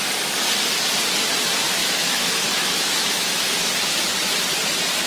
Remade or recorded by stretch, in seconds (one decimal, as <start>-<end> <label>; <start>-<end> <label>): 0.0-1.8 recorded; 1.8-3.7 remade; 3.7-5.1 recorded